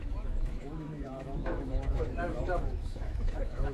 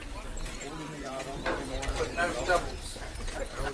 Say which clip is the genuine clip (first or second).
second